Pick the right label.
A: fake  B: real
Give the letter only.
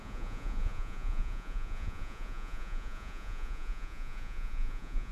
A